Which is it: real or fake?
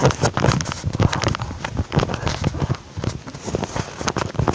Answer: real